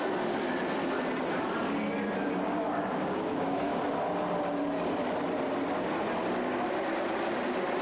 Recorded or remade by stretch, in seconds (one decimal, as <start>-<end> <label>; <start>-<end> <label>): 0.0-2.9 recorded; 2.9-3.8 remade; 3.8-7.8 recorded